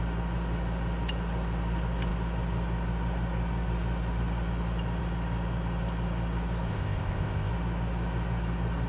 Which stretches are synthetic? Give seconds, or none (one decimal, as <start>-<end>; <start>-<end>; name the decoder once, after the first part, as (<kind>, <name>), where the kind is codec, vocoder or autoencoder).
6.7-7.5 (codec, ZipCodec)